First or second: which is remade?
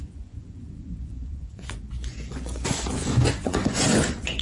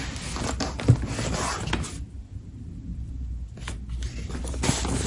first